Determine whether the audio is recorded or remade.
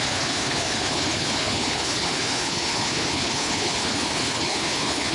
remade